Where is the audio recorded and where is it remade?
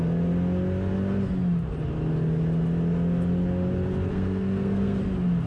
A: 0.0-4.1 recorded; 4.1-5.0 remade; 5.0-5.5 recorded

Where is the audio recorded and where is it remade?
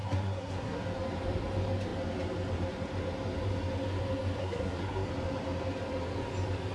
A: 0.0-0.8 remade; 0.8-4.4 recorded; 4.4-5.1 remade; 5.1-6.7 recorded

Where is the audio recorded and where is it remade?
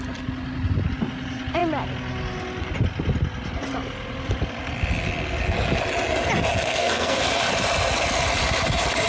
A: 0.0-6.5 recorded; 6.5-7.2 remade; 7.2-9.1 recorded